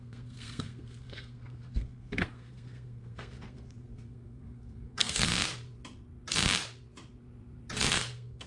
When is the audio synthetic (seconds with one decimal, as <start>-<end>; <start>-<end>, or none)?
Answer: 0.0-5.3; 7.9-8.5